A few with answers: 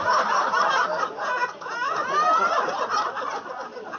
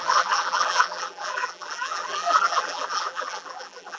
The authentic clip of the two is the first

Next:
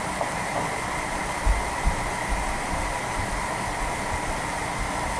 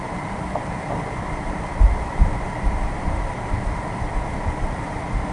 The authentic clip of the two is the first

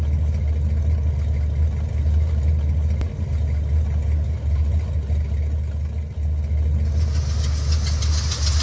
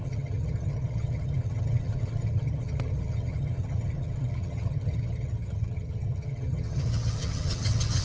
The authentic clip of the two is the first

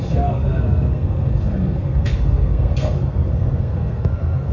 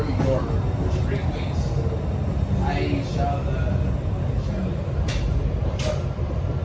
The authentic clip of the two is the second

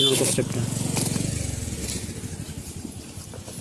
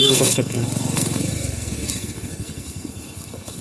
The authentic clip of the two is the first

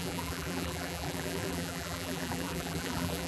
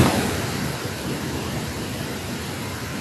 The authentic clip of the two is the second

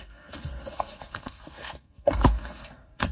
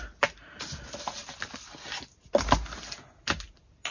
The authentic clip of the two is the second